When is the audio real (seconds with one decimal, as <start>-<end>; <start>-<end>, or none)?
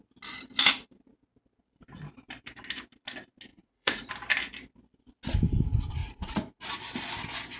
0.0-3.5; 4.1-6.0; 6.6-7.6